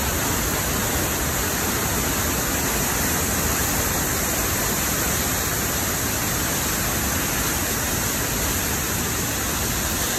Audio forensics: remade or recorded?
recorded